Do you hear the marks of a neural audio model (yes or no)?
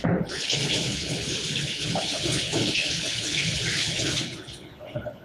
yes